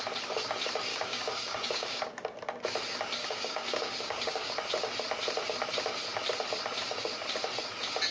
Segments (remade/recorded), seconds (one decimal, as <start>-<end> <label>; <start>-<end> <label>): 0.0-0.9 recorded; 0.9-2.0 remade; 2.0-3.2 recorded; 3.2-4.5 remade; 4.5-8.1 recorded